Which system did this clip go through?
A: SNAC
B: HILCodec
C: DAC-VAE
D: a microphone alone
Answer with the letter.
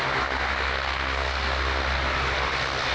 D